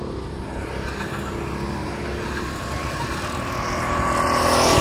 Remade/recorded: recorded